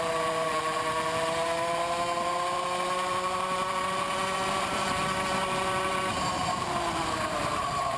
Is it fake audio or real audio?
fake